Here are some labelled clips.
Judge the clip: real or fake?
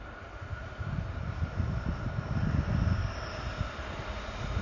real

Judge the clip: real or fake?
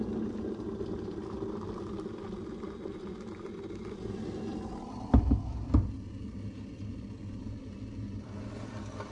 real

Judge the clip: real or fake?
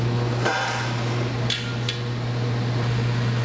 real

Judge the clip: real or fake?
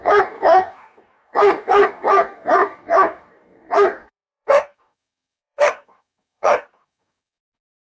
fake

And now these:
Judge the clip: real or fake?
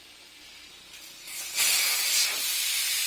real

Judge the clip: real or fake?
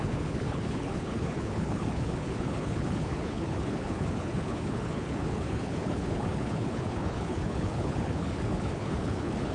fake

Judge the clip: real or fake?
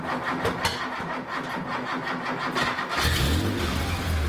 real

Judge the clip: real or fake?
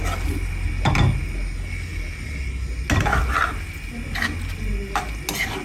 real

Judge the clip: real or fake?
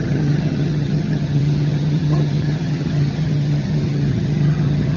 fake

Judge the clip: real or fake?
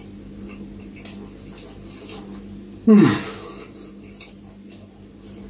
real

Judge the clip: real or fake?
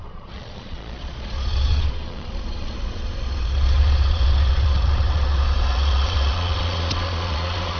fake